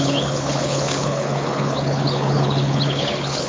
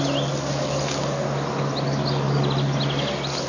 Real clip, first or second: second